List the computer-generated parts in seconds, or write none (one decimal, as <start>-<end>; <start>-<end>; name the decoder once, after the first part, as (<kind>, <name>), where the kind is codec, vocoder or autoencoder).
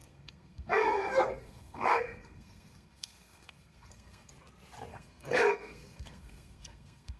0.0-4.3 (codec, SNAC); 4.9-7.2